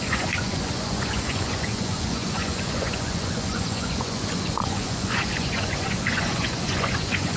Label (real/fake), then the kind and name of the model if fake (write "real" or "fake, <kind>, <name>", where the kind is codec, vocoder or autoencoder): fake, vocoder, Vocos